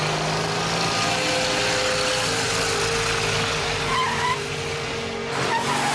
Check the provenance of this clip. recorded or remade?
recorded